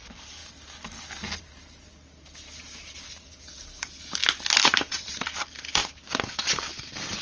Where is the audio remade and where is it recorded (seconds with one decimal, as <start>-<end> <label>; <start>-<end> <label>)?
0.0-4.2 remade; 4.2-4.9 recorded; 4.9-5.8 remade; 5.8-6.8 recorded; 6.8-7.2 remade

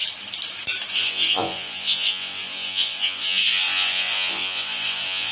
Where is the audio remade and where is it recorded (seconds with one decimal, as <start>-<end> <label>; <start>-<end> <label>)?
0.0-0.9 recorded; 0.9-5.3 remade

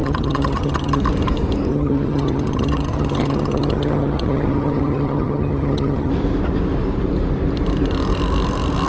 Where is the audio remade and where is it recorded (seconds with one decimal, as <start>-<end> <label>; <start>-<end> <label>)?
0.0-1.0 remade; 1.0-1.7 recorded; 1.7-6.1 remade; 6.1-8.9 recorded